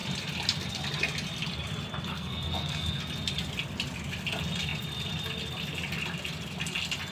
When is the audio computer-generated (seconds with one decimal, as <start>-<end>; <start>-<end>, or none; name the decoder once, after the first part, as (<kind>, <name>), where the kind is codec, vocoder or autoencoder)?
2.1-3.0 (codec, SNAC)